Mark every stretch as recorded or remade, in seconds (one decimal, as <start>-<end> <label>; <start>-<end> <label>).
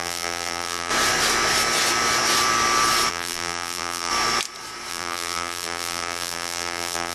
0.0-0.9 remade; 0.9-3.1 recorded; 3.1-4.1 remade; 4.1-4.9 recorded; 4.9-7.1 remade